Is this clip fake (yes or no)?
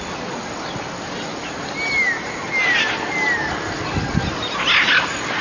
no